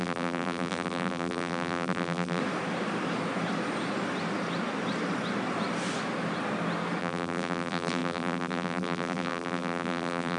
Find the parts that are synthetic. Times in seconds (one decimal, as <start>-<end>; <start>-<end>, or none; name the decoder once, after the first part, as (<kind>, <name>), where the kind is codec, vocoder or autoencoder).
0.0-2.4 (vocoder, BigVGAN v2); 7.0-10.4